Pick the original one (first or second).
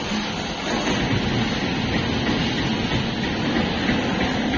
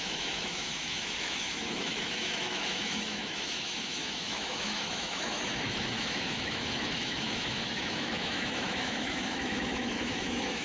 first